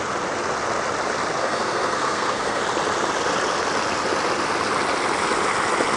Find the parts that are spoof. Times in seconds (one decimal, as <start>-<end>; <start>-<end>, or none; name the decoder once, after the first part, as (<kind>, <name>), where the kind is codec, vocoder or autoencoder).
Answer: 1.4-2.6 (codec, SNAC)